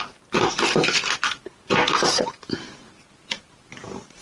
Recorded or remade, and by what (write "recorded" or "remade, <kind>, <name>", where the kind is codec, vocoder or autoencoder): remade, vocoder, BigVGAN v2